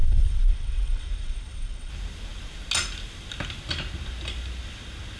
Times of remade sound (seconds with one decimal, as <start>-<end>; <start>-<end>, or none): 0.0-1.9